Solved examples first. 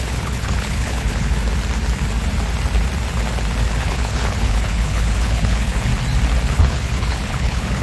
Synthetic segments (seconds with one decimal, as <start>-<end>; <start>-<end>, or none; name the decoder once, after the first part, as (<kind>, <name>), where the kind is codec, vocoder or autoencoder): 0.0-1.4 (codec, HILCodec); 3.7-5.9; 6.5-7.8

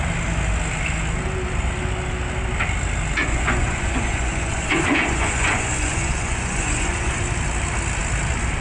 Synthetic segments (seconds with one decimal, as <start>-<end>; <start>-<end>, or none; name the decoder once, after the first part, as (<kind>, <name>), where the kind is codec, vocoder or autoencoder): 3.2-7.2 (vocoder, Vocos)

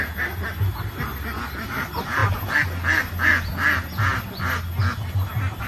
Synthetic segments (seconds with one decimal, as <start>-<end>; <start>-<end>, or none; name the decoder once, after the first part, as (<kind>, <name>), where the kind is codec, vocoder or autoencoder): none

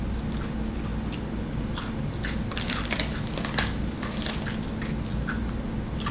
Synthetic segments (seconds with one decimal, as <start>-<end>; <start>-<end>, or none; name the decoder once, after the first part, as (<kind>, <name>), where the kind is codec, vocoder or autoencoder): none

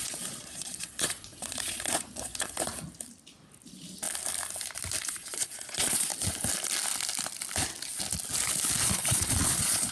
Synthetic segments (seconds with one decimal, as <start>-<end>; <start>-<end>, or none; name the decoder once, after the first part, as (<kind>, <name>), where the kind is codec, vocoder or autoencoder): 0.0-2.7 (vocoder, Vocos); 5.0-6.1; 8.8-9.9